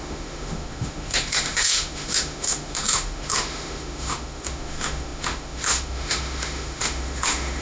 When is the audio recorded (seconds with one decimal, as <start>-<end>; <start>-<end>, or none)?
none